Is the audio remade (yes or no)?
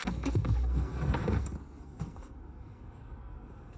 yes